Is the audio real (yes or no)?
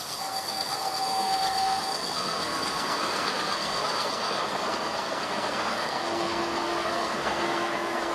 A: no